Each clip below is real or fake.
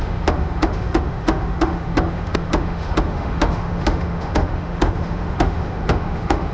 fake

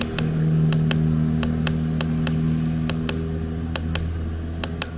real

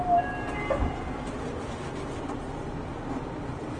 real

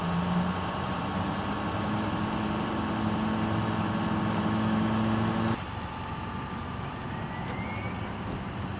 real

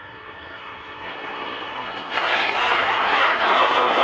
fake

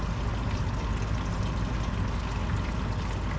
real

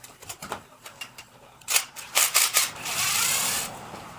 fake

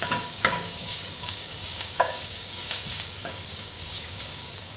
fake